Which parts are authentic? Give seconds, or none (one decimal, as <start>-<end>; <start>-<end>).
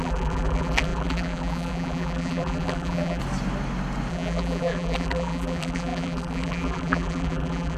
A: 3.2-4.1